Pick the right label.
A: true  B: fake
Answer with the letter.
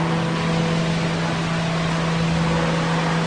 A